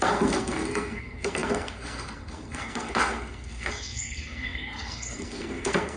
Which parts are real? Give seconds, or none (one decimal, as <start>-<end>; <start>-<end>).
none